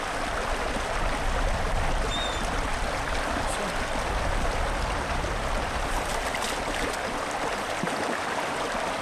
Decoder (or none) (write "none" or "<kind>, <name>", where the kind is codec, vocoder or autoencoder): none